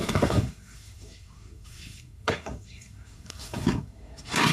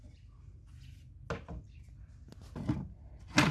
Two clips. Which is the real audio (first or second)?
second